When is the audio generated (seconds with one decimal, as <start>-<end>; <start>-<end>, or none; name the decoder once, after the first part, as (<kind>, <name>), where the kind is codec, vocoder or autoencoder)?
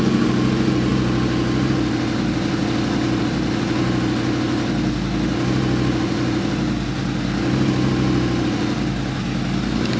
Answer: none